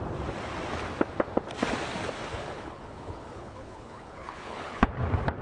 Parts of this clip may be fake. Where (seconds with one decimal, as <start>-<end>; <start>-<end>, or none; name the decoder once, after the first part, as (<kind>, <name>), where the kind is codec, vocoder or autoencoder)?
2.3-4.9 (codec, HILCodec)